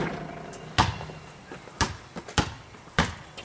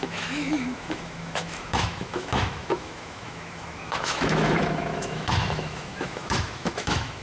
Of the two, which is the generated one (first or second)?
second